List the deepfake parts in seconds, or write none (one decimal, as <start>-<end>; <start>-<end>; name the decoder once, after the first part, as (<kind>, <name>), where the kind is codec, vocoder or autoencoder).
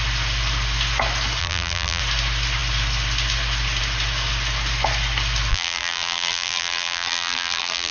1.4-2.0 (vocoder, BigVGAN v2); 5.5-7.9